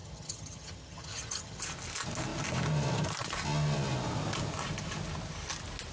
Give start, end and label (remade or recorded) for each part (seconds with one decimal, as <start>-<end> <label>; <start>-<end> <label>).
0.0-1.6 remade; 1.6-5.9 recorded